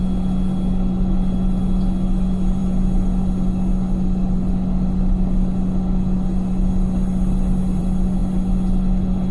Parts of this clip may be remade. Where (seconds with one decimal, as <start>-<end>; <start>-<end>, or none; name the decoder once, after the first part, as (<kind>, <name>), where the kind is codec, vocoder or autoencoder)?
none